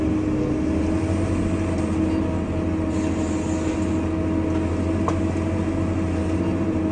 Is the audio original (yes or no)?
yes